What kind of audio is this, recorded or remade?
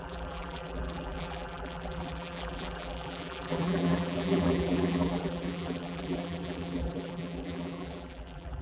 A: remade